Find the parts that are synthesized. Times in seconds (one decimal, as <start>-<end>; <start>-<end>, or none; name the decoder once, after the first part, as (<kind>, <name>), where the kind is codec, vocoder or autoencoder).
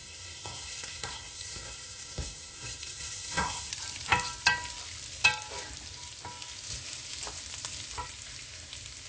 0.0-3.7 (codec, SNAC)